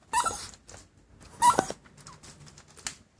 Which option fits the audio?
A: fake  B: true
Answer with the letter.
B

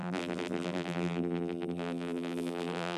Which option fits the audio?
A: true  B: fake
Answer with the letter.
B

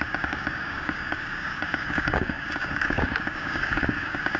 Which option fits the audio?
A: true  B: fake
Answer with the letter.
B